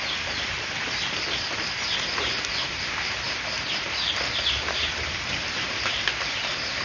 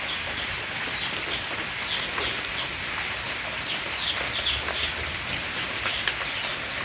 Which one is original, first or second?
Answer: second